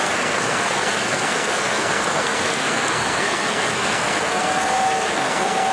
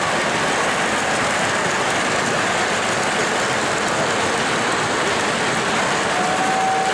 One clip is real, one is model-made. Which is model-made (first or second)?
first